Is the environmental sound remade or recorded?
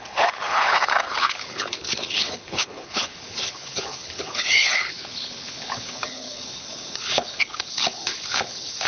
remade